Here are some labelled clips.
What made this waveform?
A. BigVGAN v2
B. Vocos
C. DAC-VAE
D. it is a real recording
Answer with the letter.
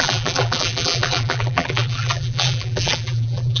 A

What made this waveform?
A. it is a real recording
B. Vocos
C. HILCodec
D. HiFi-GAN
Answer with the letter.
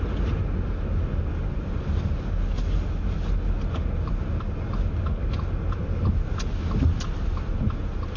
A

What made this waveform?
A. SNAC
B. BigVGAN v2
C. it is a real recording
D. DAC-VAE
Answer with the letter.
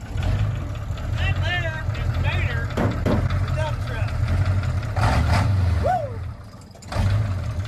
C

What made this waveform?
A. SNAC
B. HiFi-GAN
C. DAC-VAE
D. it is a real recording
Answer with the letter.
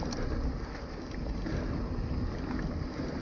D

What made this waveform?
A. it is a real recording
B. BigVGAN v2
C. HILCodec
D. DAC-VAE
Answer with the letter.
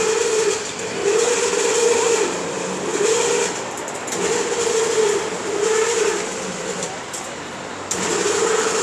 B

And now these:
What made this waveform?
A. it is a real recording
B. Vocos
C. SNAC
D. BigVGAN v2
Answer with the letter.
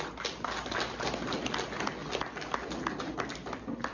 A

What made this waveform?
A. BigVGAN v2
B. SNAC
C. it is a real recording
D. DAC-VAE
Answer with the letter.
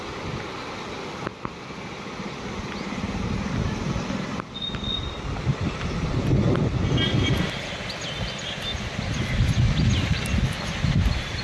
C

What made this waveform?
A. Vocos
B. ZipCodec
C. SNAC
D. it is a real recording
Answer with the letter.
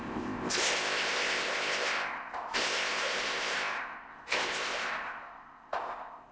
B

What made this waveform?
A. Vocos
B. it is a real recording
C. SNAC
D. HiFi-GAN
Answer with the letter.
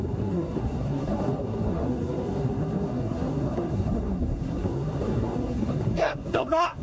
C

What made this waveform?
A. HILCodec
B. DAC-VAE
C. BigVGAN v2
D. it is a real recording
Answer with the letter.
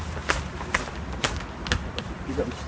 D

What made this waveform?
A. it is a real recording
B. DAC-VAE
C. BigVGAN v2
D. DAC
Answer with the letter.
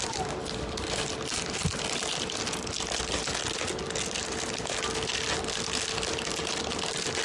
A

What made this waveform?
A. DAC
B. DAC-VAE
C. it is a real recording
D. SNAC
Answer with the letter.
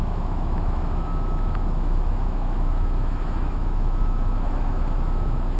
B